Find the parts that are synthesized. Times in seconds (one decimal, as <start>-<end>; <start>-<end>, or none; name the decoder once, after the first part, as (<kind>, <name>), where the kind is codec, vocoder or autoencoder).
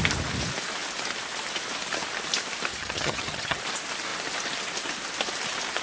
2.7-3.6 (vocoder, HiFi-GAN)